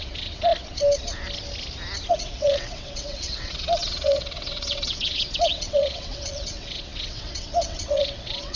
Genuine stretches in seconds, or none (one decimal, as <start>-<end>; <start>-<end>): 0.5-2.1